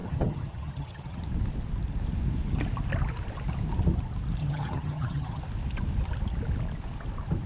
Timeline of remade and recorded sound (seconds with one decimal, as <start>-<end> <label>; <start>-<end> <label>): 0.0-1.2 remade; 1.2-4.4 recorded; 4.4-5.4 remade; 5.4-7.5 recorded